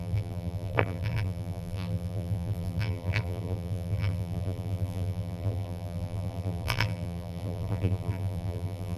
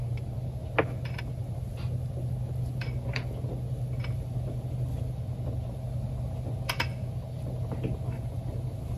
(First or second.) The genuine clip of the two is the second